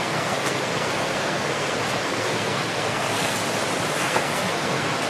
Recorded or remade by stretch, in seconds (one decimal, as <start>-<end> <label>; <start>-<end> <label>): 0.0-3.4 remade; 3.4-4.0 recorded; 4.0-5.1 remade

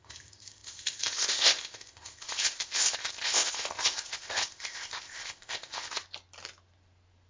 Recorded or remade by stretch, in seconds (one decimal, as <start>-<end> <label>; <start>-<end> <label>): 0.0-6.0 remade; 6.0-7.3 recorded

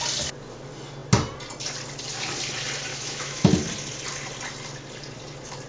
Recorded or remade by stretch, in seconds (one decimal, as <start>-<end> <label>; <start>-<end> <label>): 0.0-2.9 recorded; 2.9-3.5 remade; 3.5-5.7 recorded

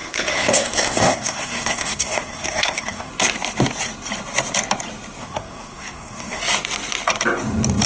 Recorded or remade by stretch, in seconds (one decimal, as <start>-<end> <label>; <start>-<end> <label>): 0.0-3.1 remade; 3.1-5.2 recorded; 5.2-6.4 remade; 6.4-7.9 recorded

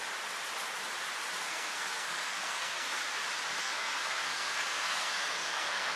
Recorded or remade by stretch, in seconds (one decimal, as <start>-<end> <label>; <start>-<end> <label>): 0.0-1.4 recorded; 1.4-3.0 remade; 3.0-3.6 recorded; 3.6-6.0 remade

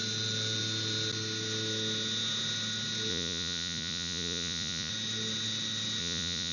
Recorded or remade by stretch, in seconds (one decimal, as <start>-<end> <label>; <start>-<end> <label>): 0.0-3.1 recorded; 3.1-4.9 remade; 4.9-6.0 recorded; 6.0-6.5 remade